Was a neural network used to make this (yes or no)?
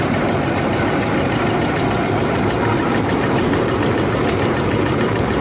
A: yes